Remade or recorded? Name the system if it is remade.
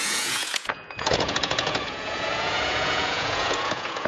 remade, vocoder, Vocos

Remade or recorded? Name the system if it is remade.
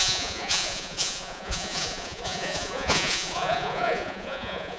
remade, vocoder, Vocos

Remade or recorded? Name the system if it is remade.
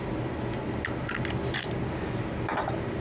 recorded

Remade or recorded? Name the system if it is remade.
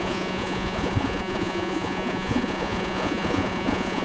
remade, vocoder, Vocos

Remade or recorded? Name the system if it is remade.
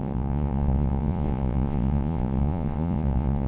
remade, vocoder, Vocos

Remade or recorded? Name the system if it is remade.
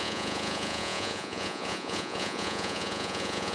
remade, vocoder, Vocos